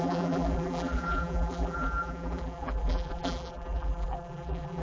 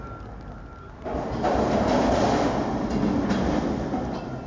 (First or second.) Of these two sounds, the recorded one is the second